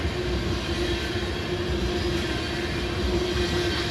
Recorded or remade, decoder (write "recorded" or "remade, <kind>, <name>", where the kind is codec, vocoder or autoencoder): recorded